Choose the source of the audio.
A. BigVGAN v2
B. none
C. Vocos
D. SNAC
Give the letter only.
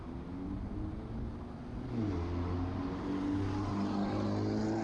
B